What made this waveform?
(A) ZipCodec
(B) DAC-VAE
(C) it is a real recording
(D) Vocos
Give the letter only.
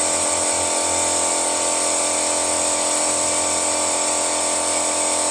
C